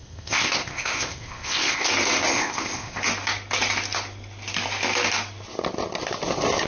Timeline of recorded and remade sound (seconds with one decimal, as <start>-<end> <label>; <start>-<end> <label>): 0.0-1.9 remade; 1.9-2.3 recorded; 2.3-3.0 remade; 3.0-6.7 recorded